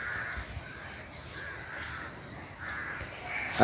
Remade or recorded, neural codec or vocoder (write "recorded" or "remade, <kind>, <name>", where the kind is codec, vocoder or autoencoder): recorded